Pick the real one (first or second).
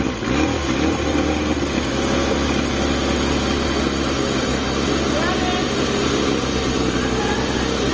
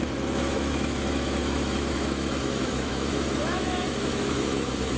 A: first